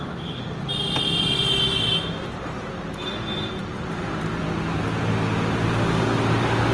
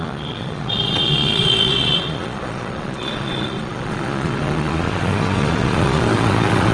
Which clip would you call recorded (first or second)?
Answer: first